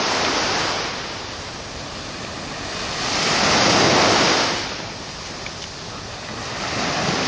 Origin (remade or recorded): recorded